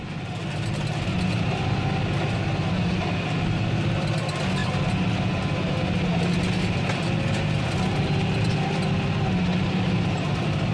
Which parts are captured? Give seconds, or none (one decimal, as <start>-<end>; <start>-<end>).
0.0-10.7